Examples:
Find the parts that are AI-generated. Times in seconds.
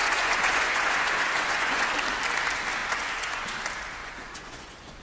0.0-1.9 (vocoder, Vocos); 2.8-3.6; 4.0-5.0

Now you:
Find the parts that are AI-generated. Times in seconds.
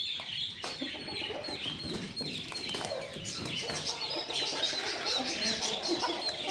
none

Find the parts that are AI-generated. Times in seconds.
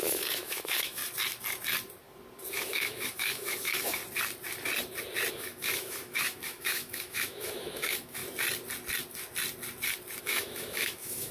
0.0-1.0 (autoencoder, DAC-VAE); 2.5-4.0; 5.3-8.2; 10.2-11.3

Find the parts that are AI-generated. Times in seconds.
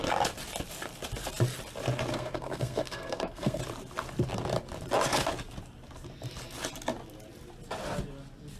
2.1-3.6 (codec, SNAC)